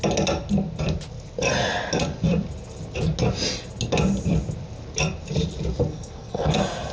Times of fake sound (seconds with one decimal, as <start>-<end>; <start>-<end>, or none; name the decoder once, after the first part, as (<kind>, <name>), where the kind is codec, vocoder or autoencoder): 5.9-6.5 (codec, SNAC)